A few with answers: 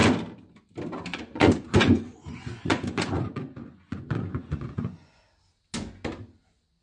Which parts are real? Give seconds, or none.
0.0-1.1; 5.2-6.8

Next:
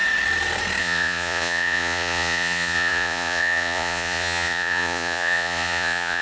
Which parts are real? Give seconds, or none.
0.0-0.8

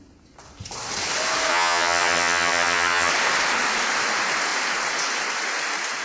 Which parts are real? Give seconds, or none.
0.0-1.5; 3.1-6.0

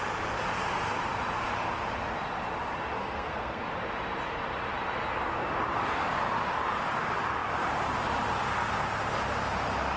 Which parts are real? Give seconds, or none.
0.0-3.0; 3.6-10.0

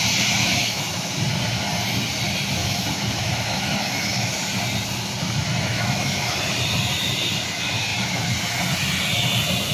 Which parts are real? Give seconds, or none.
0.0-0.4; 1.1-2.6; 4.3-5.7; 6.3-9.7

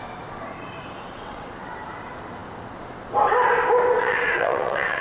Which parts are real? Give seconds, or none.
0.0-1.1; 1.7-4.0

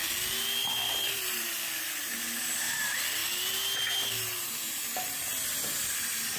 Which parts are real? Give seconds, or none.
0.0-0.7; 2.1-2.7; 3.2-5.9